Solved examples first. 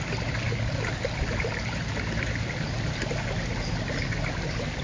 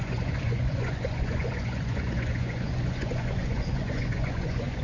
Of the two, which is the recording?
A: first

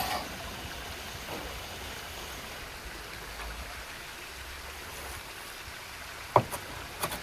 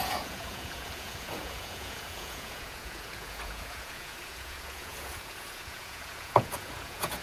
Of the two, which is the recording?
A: first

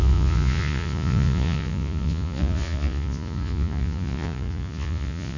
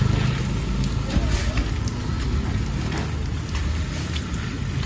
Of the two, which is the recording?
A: second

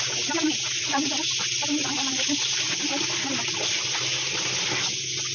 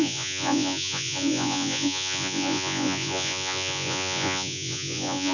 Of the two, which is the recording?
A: first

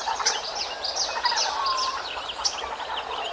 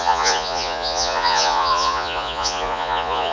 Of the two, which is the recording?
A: first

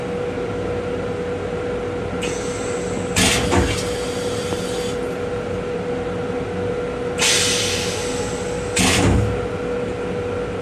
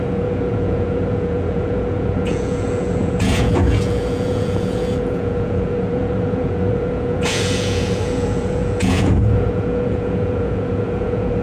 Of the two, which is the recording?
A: first